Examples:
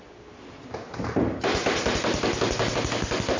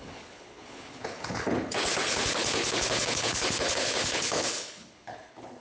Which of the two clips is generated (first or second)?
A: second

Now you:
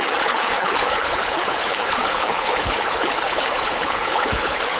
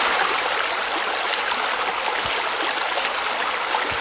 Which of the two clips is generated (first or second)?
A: first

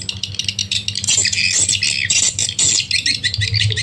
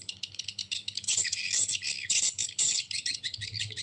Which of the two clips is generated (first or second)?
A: second